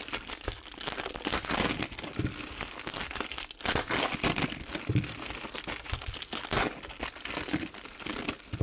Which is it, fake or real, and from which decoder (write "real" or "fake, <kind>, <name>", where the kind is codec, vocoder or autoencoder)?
real